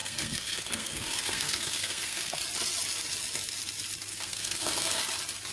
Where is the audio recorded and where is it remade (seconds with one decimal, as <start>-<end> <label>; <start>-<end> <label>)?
0.0-2.4 remade; 2.4-4.1 recorded; 4.1-5.0 remade; 5.0-5.5 recorded